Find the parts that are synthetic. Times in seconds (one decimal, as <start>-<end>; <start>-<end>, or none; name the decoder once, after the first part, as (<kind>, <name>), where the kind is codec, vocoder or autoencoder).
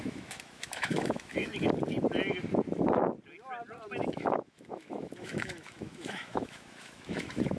0.0-1.5 (autoencoder, DAC-VAE); 4.0-7.6